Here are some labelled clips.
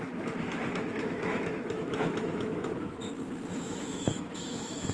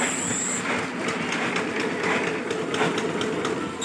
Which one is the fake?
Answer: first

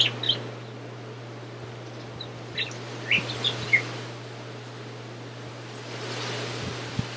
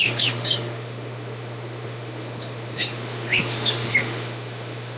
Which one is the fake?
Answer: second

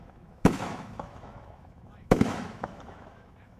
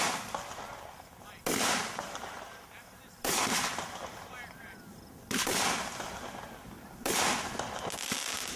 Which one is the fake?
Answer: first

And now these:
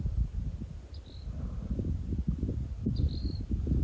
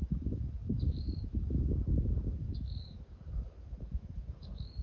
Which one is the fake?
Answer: second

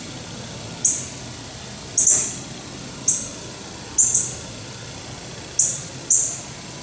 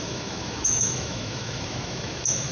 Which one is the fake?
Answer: second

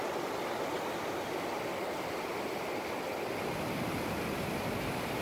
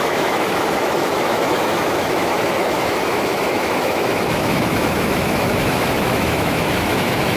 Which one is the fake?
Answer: second